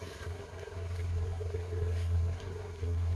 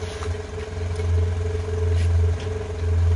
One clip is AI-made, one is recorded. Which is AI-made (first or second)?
first